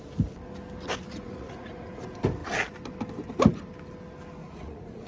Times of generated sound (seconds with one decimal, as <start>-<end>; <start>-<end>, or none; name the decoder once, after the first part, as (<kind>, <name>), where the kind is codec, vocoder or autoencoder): 1.1-2.0 (vocoder, Vocos); 4.4-5.1